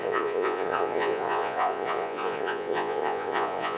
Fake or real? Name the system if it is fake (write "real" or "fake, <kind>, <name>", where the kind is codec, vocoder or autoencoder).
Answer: fake, vocoder, Vocos